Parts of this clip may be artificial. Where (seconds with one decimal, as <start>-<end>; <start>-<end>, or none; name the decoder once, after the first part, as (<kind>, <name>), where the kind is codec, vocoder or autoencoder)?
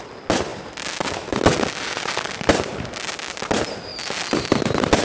none